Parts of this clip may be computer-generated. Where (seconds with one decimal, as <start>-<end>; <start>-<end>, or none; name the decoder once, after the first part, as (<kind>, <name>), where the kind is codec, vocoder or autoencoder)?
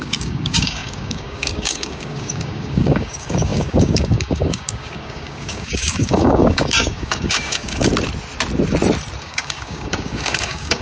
0.0-7.9 (codec, DAC); 9.2-10.8